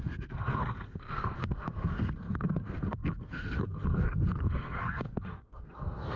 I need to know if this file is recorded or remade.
remade